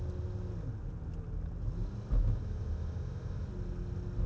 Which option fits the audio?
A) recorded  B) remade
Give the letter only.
A